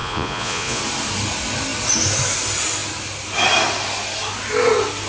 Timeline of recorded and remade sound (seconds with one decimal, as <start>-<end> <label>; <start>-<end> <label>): 0.0-0.8 remade; 0.8-5.1 recorded